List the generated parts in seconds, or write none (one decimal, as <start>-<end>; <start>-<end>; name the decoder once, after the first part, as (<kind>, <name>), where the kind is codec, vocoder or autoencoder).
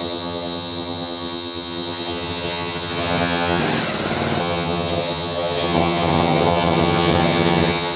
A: 0.0-3.6 (vocoder, HiFi-GAN); 4.4-8.0